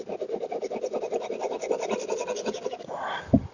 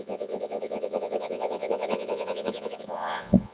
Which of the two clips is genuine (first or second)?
first